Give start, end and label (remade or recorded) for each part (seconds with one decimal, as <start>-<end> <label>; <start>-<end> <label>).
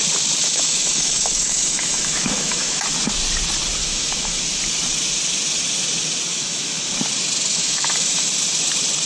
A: 0.0-0.4 recorded; 0.4-2.8 remade; 2.8-3.8 recorded; 3.8-4.4 remade; 4.4-6.3 recorded; 6.3-6.9 remade; 6.9-7.5 recorded; 7.5-8.3 remade; 8.3-9.1 recorded